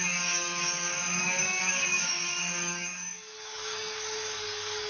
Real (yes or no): no